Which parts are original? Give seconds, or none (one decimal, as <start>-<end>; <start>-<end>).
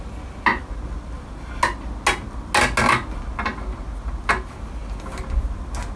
0.0-6.0